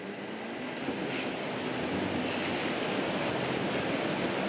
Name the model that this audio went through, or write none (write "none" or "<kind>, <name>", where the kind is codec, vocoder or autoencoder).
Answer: none